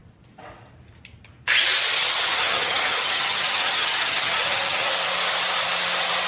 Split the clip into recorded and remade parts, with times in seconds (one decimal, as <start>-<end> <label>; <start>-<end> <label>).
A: 0.0-2.3 recorded; 2.3-4.9 remade; 4.9-6.3 recorded